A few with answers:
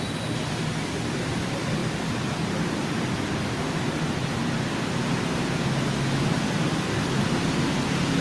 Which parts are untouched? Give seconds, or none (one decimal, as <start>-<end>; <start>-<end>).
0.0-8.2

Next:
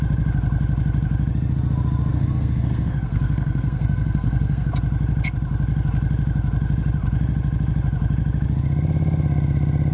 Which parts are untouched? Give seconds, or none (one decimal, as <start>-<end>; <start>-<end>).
0.0-2.1; 4.7-9.9

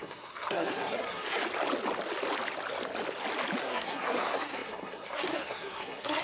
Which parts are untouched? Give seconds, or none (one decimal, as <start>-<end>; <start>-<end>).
1.4-3.6